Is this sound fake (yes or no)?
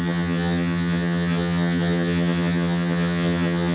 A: yes